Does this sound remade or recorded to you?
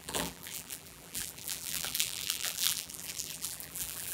remade